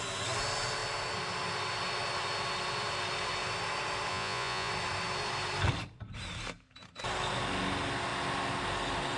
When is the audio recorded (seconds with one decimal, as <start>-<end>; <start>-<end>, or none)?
0.0-4.1; 4.7-9.2

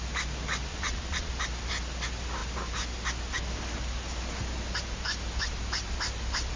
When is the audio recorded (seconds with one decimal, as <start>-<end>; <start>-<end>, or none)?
0.0-0.7; 1.3-6.6

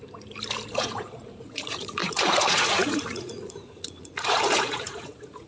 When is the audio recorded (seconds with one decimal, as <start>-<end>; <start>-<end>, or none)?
0.0-0.7

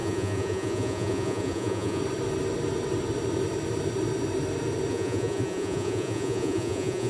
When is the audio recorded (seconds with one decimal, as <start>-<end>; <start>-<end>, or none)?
2.0-4.9

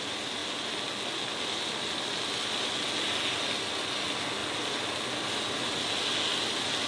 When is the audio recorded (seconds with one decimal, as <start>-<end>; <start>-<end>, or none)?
0.0-6.9

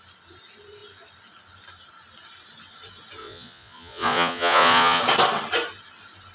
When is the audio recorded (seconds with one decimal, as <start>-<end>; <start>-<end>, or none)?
0.0-3.2; 5.0-6.3